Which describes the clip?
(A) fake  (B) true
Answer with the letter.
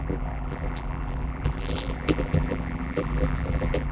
A